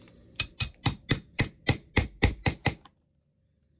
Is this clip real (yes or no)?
yes